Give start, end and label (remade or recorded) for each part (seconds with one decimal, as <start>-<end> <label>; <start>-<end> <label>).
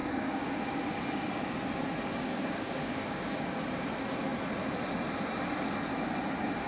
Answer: 0.0-0.8 remade; 0.8-2.1 recorded; 2.1-3.6 remade; 3.6-6.7 recorded